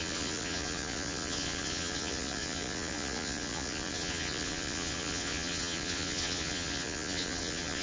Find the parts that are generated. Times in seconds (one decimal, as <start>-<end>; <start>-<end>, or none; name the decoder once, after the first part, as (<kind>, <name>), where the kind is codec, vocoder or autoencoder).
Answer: 0.0-7.8 (vocoder, Vocos)